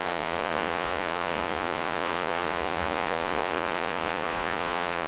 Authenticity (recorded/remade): remade